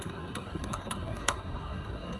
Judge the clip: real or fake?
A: fake